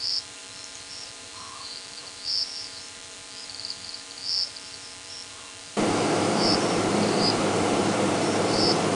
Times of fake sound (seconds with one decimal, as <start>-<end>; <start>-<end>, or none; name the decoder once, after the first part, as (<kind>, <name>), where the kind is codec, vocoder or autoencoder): 0.0-8.9 (vocoder, BigVGAN v2)